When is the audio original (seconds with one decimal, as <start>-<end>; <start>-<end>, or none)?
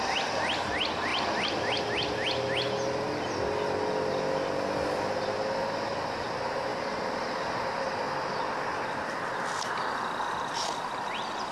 0.0-11.5